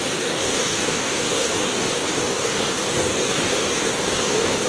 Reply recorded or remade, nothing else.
remade